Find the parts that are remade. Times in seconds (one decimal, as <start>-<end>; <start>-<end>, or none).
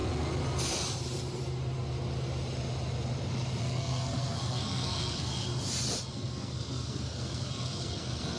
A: 3.6-5.5; 6.1-8.4